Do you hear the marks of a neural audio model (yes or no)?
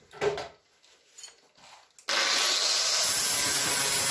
no